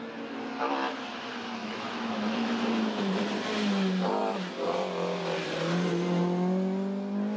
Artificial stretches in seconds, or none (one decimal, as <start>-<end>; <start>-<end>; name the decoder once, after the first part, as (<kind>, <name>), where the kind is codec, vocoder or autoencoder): 0.6-1.2 (autoencoder, DAC-VAE); 1.6-3.2